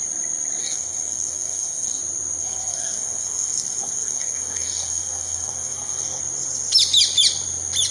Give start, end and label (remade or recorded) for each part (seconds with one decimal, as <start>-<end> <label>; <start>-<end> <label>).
0.0-0.6 recorded; 0.6-2.0 remade; 2.0-2.4 recorded; 2.4-6.2 remade; 6.2-7.9 recorded